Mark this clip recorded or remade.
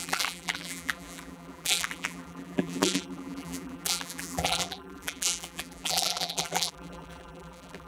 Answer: remade